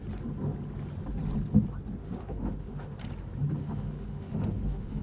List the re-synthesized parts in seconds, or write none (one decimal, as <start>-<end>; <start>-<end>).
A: 2.0-3.0; 3.6-5.0